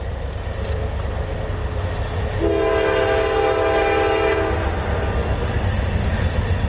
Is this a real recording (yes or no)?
yes